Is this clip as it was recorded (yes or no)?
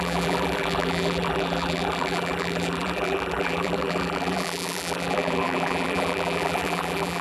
no